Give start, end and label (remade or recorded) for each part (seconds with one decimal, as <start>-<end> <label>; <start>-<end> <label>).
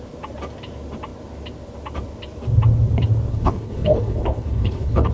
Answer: 0.0-3.3 recorded; 3.3-5.1 remade